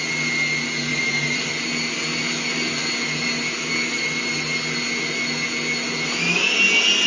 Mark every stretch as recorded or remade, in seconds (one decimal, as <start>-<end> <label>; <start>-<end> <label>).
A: 0.0-0.9 recorded; 0.9-1.5 remade; 1.5-7.1 recorded